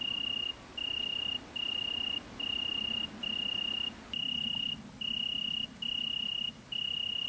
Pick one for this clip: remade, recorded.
recorded